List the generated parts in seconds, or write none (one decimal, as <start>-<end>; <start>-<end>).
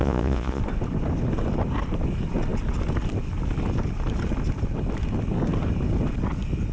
0.0-0.6